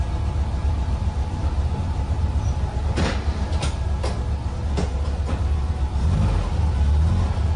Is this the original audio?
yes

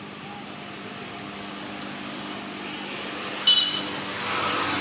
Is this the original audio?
yes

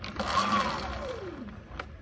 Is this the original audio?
no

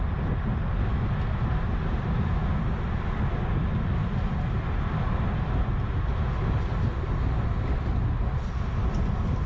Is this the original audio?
yes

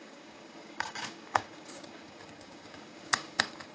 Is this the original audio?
no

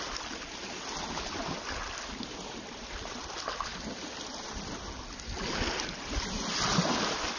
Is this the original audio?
yes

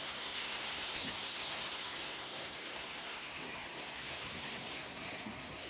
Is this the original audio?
no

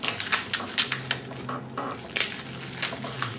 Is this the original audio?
yes